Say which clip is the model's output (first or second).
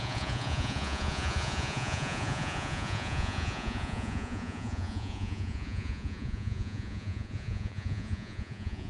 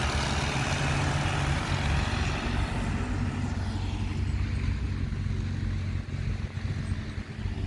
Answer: first